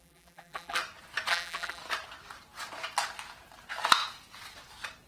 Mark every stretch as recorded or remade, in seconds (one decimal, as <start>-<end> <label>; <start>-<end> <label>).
0.0-0.8 remade; 0.8-1.3 recorded; 1.3-1.8 remade; 1.8-5.1 recorded